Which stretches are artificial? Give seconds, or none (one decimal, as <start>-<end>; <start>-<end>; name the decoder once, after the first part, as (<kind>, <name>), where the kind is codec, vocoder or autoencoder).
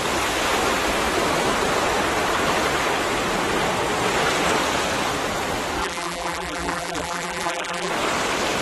5.8-7.9 (vocoder, BigVGAN v2)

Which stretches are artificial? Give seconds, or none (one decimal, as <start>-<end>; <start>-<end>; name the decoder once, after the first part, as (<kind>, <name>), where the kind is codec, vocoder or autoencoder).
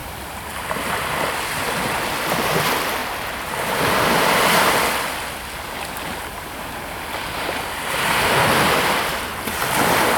0.0-1.6 (vocoder, BigVGAN v2)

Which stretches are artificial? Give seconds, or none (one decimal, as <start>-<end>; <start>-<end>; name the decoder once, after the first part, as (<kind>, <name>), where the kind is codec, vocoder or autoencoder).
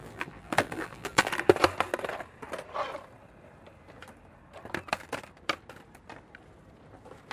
0.0-1.3 (vocoder, BigVGAN v2)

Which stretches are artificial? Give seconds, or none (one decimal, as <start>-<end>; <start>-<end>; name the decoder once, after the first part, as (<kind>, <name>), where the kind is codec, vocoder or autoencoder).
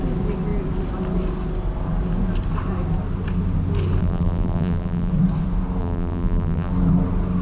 4.0-5.1 (vocoder, BigVGAN v2); 5.8-6.7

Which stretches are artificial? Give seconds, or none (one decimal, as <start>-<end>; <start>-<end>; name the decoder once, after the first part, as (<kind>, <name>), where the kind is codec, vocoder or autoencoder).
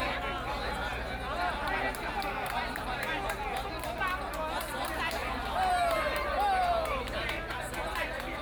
5.2-6.3 (vocoder, BigVGAN v2)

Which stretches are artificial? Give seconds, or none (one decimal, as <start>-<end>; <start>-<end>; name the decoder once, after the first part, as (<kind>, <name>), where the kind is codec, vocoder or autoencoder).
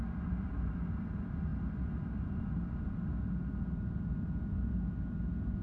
0.0-5.6 (vocoder, BigVGAN v2)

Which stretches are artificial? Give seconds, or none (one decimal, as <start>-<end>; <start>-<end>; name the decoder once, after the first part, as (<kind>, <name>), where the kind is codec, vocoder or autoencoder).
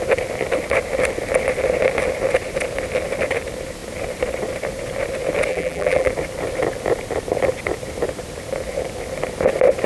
5.5-6.1 (vocoder, BigVGAN v2)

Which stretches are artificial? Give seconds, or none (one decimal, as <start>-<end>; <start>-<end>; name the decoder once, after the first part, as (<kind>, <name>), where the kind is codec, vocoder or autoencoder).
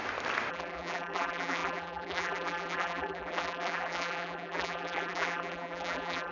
0.5-6.3 (vocoder, BigVGAN v2)